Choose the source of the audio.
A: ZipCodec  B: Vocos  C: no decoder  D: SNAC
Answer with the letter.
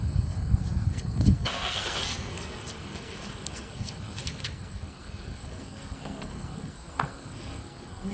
D